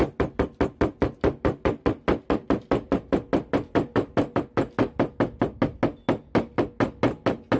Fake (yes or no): no